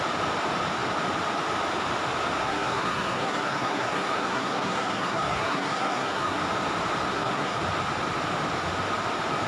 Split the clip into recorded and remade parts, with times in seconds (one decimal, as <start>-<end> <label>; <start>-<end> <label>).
0.0-2.4 recorded; 2.4-6.4 remade; 6.4-7.1 recorded; 7.1-7.6 remade; 7.6-9.5 recorded